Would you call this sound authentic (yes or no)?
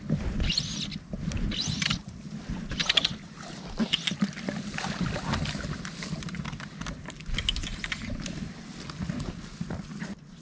yes